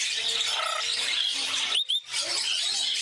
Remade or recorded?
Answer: recorded